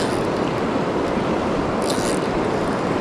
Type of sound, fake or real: real